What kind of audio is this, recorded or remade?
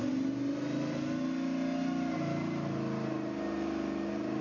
recorded